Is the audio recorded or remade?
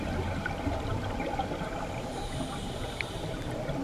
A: recorded